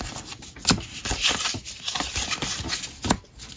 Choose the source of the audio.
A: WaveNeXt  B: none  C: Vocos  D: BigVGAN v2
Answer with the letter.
B